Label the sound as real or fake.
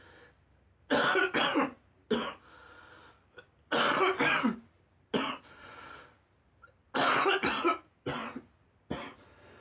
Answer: real